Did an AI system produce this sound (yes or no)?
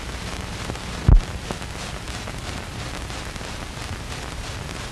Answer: yes